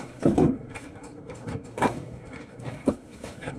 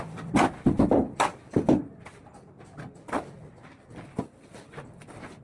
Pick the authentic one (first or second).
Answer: second